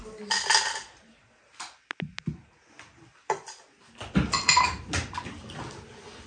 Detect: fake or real real